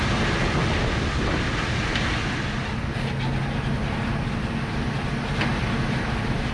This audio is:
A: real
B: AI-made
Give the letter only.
A